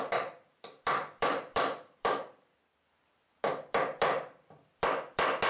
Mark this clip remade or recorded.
remade